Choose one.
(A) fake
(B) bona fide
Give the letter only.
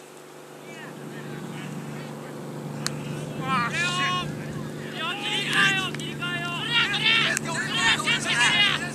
B